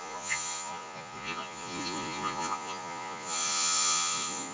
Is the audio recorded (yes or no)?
no